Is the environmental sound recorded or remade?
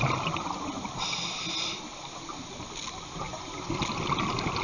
recorded